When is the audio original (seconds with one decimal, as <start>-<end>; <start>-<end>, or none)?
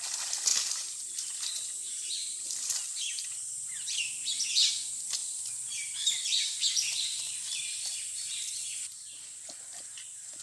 0.0-0.5; 1.2-1.8; 3.7-5.2; 7.6-10.4